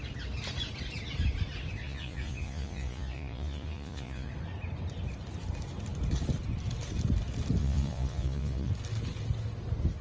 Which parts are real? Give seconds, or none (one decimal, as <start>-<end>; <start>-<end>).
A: 0.0-1.8; 4.3-7.6; 8.7-10.0